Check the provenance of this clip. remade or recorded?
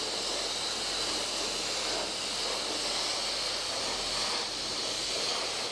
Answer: recorded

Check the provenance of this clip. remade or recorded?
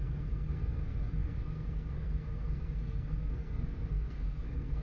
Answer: remade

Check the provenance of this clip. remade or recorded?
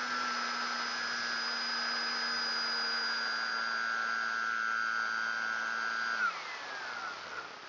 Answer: recorded